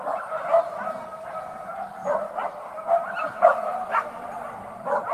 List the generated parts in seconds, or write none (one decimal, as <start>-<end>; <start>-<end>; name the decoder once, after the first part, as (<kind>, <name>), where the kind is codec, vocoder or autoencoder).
none